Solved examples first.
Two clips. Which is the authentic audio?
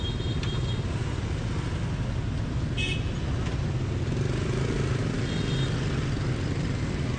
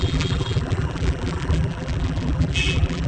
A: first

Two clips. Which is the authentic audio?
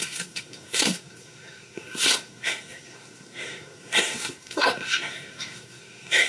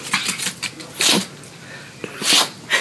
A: second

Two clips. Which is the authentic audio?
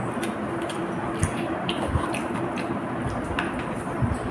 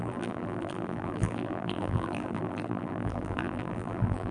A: first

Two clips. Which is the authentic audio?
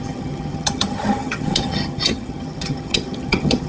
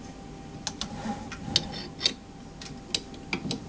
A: second